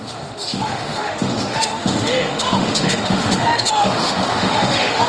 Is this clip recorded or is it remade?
remade